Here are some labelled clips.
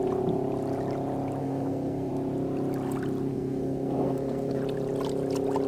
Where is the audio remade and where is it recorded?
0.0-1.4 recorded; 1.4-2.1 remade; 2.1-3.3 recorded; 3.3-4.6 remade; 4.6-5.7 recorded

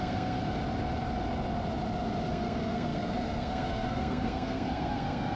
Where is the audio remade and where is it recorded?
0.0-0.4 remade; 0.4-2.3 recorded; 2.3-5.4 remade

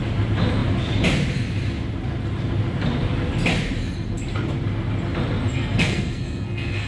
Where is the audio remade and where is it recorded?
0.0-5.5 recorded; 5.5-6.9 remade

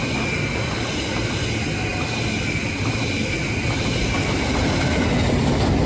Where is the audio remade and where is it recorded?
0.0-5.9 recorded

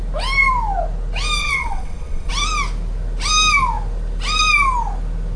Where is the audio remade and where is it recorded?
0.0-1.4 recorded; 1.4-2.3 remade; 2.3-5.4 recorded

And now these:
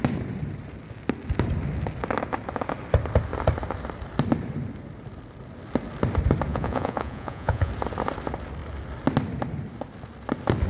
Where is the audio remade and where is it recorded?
0.0-6.5 recorded; 6.5-7.7 remade; 7.7-10.7 recorded

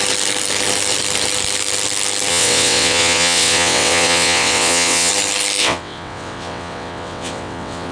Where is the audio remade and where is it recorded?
0.0-2.3 recorded; 2.3-5.1 remade; 5.1-5.6 recorded; 5.6-7.9 remade